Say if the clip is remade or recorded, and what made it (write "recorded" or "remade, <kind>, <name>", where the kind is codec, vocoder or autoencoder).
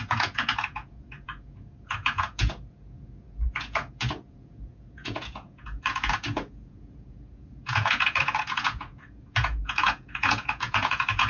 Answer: remade, vocoder, Vocos